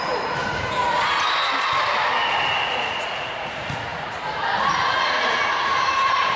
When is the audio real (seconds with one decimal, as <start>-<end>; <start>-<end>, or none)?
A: 0.8-2.6